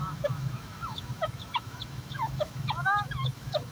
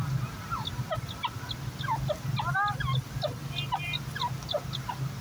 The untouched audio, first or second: second